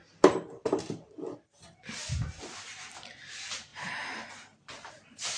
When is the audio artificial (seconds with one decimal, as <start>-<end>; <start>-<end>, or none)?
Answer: 0.0-3.7; 4.9-5.4